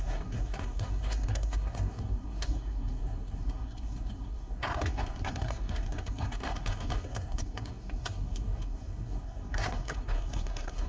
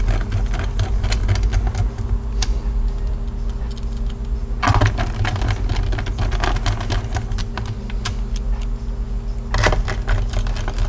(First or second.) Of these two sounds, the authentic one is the second